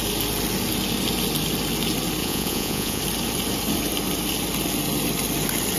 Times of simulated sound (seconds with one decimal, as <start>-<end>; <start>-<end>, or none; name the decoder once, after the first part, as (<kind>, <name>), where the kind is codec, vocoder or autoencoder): 2.2-3.0 (vocoder, Vocos)